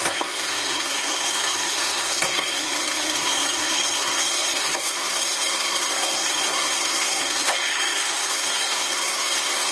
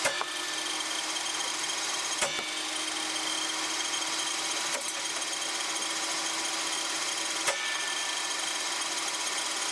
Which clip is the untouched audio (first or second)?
second